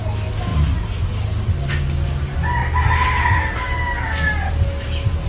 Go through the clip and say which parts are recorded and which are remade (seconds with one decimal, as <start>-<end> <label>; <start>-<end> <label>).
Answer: 0.0-5.3 recorded